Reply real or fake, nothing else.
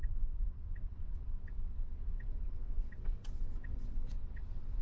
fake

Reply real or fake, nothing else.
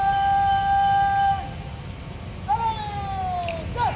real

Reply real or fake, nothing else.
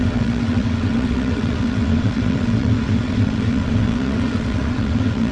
fake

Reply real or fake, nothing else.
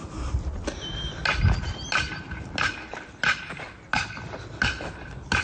real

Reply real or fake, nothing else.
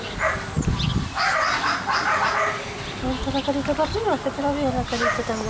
real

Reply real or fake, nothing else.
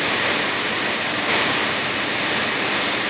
real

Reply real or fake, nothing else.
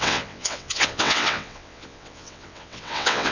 fake